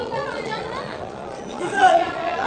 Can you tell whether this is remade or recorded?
remade